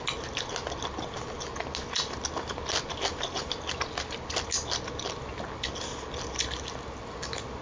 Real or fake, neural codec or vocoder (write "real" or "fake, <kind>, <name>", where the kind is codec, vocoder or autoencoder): real